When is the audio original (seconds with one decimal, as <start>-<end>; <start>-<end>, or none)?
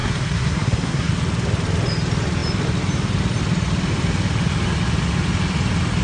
1.1-6.0